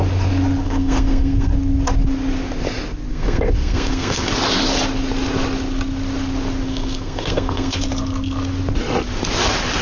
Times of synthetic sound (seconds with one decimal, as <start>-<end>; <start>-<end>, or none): 0.6-1.5; 3.1-4.3; 6.7-7.8